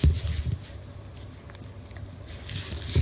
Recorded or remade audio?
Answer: recorded